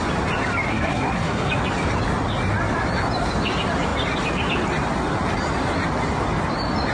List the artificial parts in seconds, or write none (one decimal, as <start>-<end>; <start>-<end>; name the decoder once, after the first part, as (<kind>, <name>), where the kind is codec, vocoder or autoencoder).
0.7-1.5 (codec, SNAC)